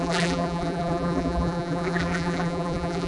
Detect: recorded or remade remade